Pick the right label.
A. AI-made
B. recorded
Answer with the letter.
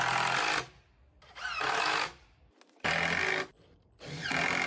B